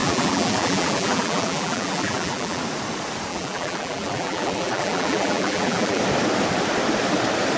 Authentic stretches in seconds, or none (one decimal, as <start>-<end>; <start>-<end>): 2.6-3.3; 6.0-7.6